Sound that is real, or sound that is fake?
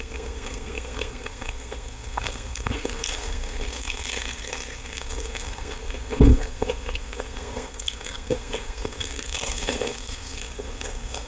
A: fake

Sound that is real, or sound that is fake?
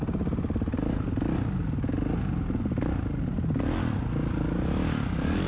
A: real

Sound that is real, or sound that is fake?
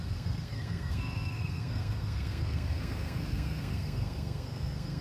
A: fake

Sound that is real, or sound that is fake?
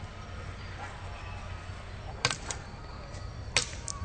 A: real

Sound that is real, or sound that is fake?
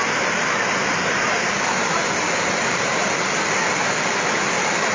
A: real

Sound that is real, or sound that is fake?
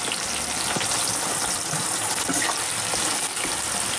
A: real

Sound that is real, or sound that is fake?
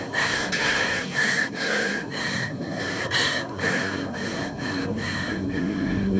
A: fake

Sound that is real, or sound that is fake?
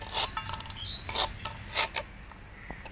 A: real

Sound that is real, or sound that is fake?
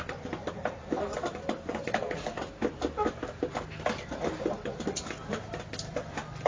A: real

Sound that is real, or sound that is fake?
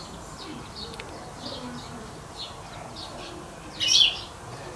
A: real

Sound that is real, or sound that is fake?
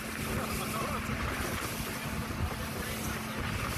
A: real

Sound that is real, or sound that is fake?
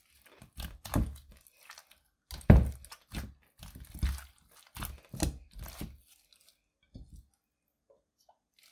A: real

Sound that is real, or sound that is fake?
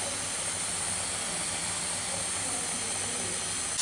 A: real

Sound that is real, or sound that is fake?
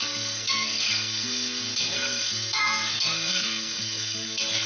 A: fake